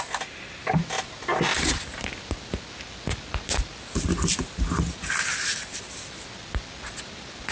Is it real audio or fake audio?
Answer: real